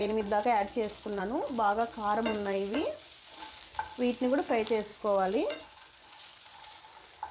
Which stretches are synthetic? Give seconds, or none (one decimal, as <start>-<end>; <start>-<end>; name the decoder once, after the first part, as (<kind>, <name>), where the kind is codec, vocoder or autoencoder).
0.0-1.2 (vocoder, Vocos); 2.3-3.6; 4.9-6.8